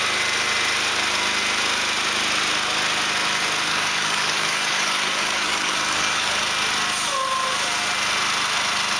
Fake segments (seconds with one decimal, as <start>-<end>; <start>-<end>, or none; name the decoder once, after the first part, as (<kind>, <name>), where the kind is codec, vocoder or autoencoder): 3.7-6.3 (codec, DAC)